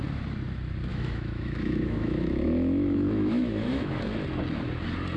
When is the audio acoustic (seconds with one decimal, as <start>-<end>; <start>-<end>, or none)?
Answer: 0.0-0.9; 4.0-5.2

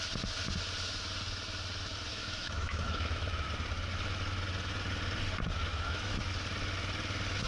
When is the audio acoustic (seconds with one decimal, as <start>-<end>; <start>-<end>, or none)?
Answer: 0.0-2.1; 3.5-5.7; 6.3-7.5

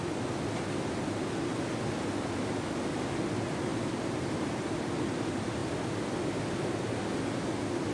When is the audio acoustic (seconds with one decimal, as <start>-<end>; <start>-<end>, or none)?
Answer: 0.0-7.9

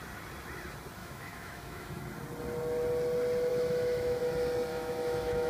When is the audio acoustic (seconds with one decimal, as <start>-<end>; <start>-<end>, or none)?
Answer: 0.0-1.0; 2.1-3.5; 4.2-4.7